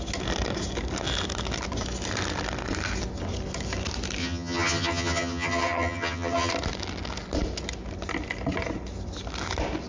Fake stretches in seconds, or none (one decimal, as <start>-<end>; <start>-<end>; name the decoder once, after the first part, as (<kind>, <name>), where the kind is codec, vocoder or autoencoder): 4.2-6.5 (vocoder, HiFi-GAN)